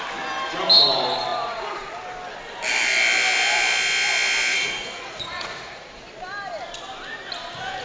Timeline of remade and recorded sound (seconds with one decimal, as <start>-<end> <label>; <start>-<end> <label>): 0.0-1.3 recorded; 1.3-1.9 remade; 1.9-4.5 recorded; 4.5-6.0 remade; 6.0-7.8 recorded